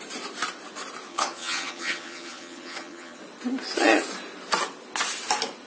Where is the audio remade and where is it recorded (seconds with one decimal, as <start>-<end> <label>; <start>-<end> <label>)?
0.0-1.1 recorded; 1.1-3.2 remade; 3.2-5.7 recorded